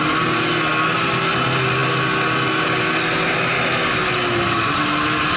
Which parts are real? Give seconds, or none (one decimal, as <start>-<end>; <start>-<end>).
0.0-5.4